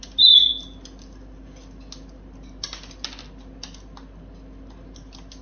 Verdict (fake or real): real